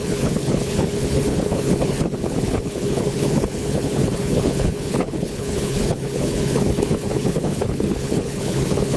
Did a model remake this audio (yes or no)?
yes